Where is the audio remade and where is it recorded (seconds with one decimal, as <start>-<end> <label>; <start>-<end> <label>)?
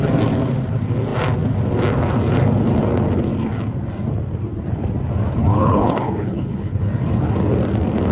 0.0-5.3 recorded; 5.3-6.8 remade; 6.8-8.1 recorded